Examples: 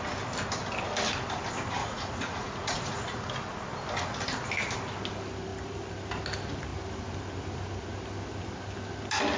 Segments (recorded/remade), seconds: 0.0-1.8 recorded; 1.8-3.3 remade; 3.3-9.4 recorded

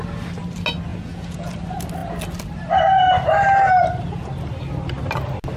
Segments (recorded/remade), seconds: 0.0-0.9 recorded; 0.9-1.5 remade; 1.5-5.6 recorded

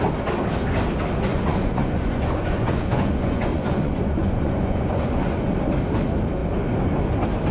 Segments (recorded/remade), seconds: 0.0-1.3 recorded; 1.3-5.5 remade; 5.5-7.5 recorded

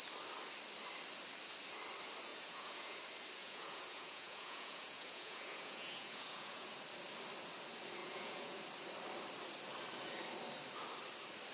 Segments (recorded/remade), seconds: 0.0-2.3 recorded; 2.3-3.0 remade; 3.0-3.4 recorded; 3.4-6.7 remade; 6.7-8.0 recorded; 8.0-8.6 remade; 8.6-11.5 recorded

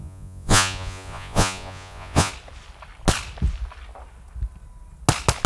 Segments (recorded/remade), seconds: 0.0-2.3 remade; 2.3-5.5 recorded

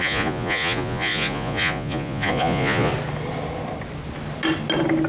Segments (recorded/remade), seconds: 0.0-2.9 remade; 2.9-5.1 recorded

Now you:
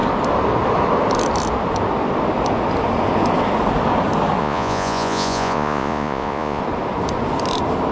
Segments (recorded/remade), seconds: 0.0-4.4 recorded; 4.4-6.6 remade; 6.6-7.9 recorded

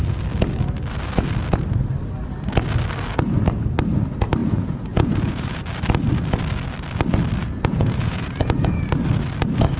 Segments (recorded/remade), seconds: 0.0-4.4 recorded; 4.4-5.6 remade; 5.6-7.4 recorded; 7.4-8.8 remade; 8.8-9.8 recorded